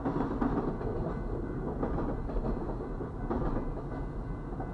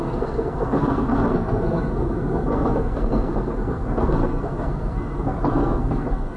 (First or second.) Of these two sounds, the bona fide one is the first